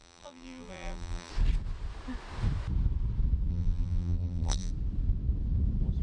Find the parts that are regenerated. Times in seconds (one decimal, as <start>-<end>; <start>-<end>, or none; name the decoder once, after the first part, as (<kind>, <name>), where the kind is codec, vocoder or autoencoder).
0.0-1.3 (vocoder, BigVGAN v2); 3.5-4.7